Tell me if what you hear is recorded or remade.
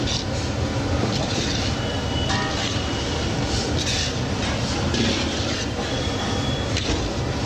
recorded